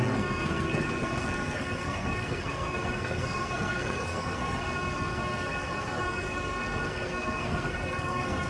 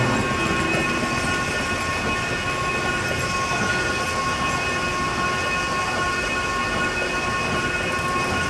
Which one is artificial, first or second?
first